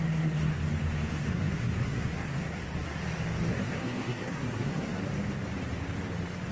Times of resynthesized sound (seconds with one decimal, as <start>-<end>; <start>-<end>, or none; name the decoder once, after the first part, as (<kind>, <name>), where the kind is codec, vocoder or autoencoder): 0.0-0.6 (codec, SNAC); 1.1-3.0; 3.5-5.0

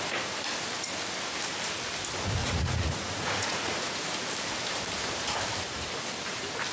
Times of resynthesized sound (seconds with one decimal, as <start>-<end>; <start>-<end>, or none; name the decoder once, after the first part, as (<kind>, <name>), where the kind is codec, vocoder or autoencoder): 2.4-4.1 (vocoder, Vocos)